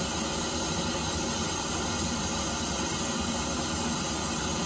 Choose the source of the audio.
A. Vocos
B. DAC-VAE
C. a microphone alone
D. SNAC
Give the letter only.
C